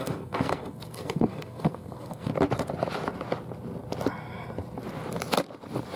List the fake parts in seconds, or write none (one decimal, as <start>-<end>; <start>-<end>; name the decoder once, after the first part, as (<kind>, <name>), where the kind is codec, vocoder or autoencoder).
0.0-2.3 (codec, SNAC)